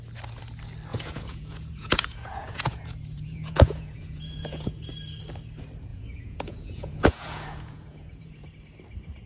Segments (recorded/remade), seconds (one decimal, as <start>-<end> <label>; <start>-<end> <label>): 0.0-0.9 recorded; 0.9-4.7 remade; 4.7-5.9 recorded; 5.9-8.5 remade; 8.5-9.3 recorded